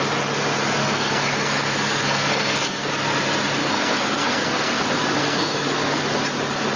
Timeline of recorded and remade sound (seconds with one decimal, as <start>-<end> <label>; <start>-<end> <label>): 0.0-0.8 recorded; 0.8-2.9 remade; 2.9-3.6 recorded; 3.6-4.8 remade; 4.8-5.2 recorded; 5.2-6.0 remade; 6.0-6.8 recorded